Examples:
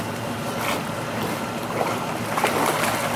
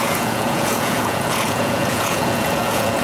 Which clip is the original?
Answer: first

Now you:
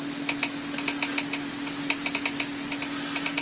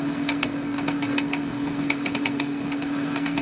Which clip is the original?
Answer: first